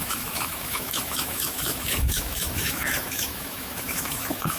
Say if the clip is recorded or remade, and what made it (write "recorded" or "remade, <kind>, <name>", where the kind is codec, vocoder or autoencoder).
remade, autoencoder, DAC-VAE